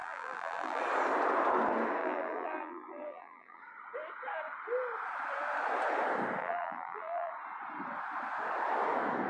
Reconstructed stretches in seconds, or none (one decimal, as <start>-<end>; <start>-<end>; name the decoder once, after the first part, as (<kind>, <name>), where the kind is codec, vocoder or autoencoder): 0.0-0.8 (vocoder, BigVGAN v2); 2.0-3.6; 6.4-7.3